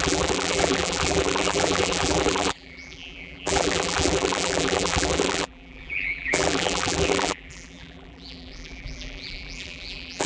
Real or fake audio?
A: fake